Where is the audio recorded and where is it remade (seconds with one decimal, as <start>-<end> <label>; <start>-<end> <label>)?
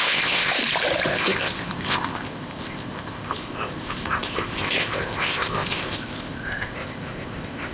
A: 0.0-0.6 remade; 0.6-1.1 recorded; 1.1-7.7 remade